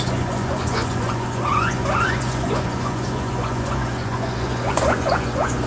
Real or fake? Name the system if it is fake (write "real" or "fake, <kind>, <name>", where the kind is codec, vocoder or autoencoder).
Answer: fake, vocoder, Vocos